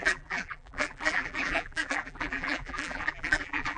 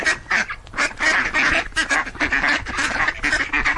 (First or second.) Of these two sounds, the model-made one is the first